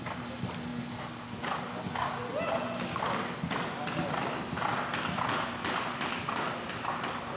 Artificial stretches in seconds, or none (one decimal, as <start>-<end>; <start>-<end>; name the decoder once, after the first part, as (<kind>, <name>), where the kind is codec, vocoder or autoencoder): 4.7-7.4 (vocoder, BigVGAN v2)